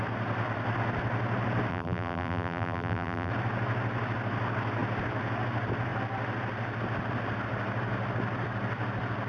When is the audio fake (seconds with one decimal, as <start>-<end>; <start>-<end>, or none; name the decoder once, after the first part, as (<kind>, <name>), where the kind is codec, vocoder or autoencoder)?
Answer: 1.7-3.3 (vocoder, BigVGAN v2)